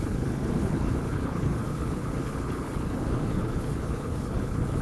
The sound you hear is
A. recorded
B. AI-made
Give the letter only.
B